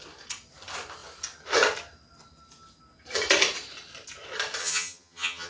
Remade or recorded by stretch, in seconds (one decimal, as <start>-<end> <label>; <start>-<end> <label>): 0.0-4.6 recorded; 4.6-5.5 remade